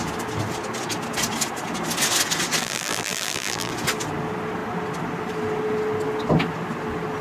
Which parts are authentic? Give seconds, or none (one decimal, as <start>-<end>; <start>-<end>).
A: 0.0-2.6; 3.7-7.2